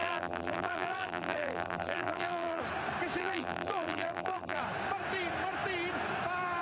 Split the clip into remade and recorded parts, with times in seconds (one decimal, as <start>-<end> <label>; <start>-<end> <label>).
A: 0.0-2.6 remade; 2.6-3.2 recorded; 3.2-4.6 remade; 4.6-6.6 recorded